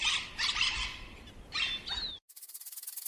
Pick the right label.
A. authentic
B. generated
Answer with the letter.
A